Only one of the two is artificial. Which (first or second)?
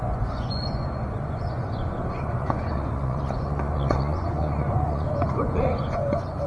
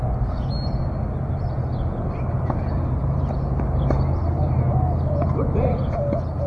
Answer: first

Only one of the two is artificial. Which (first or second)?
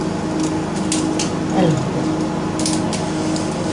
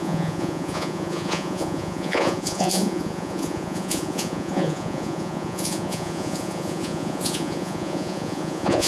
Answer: second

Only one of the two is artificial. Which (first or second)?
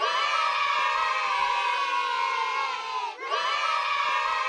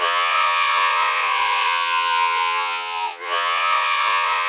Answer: second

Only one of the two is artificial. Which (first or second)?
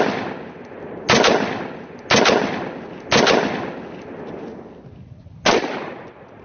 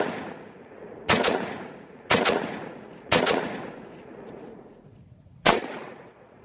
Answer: second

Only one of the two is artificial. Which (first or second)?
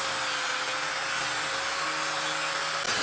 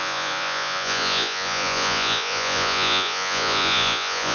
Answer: second